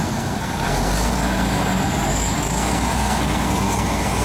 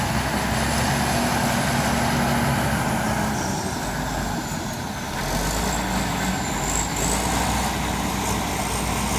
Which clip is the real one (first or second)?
second